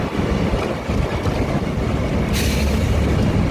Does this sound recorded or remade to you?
recorded